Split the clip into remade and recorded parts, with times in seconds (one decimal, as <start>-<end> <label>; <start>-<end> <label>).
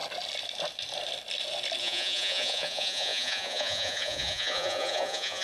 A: 0.0-1.8 recorded; 1.8-5.4 remade